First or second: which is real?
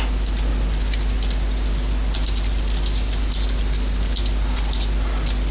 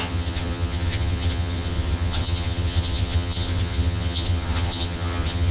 first